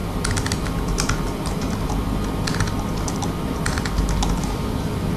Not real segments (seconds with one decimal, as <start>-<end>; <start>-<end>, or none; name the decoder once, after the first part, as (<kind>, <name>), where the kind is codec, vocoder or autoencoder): none